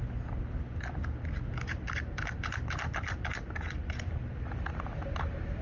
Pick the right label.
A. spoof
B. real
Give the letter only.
B